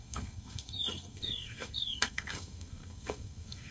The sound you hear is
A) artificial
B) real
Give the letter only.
A